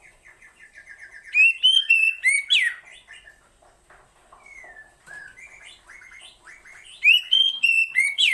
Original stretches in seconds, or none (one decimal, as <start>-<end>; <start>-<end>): 0.6-1.7; 2.2-7.1